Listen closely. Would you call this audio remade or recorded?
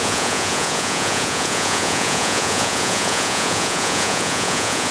remade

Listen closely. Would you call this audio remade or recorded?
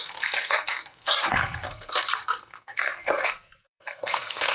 remade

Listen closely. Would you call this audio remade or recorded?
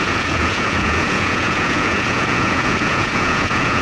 remade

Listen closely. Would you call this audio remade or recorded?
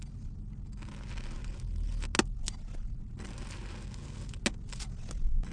recorded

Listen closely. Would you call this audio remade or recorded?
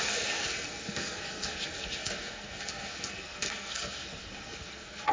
remade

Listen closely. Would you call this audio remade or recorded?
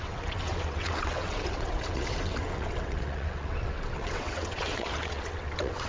remade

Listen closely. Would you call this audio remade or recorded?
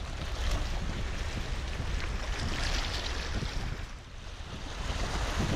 recorded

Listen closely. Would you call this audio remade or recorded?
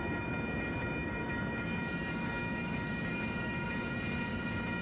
recorded